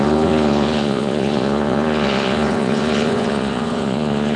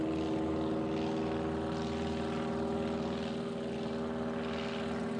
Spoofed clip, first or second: first